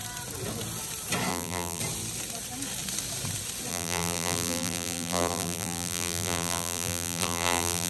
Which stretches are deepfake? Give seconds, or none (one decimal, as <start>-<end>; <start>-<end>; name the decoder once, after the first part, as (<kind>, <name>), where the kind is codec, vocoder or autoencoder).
1.3-1.8 (vocoder, BigVGAN v2); 3.7-7.9